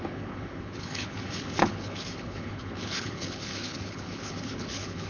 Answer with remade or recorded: remade